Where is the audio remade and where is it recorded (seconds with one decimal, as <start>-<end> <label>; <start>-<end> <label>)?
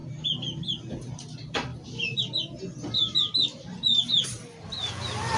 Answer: 0.0-0.9 recorded; 0.9-1.7 remade; 1.7-4.9 recorded; 4.9-5.4 remade